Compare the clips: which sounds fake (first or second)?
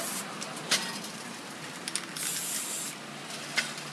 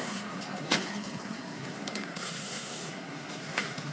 second